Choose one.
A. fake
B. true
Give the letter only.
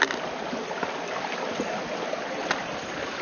B